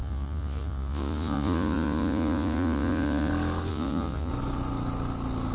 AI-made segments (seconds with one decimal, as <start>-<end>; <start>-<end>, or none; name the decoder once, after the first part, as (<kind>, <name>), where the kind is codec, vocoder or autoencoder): 0.0-3.3 (vocoder, Vocos); 3.7-4.3